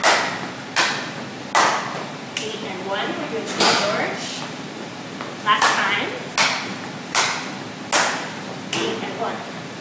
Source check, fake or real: real